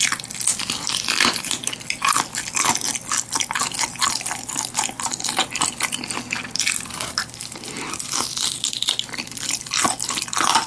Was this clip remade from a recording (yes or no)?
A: no